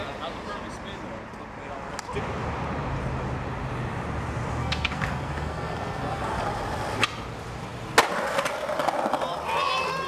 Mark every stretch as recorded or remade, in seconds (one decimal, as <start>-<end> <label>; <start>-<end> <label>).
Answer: 0.0-4.6 recorded; 4.6-6.4 remade; 6.4-10.1 recorded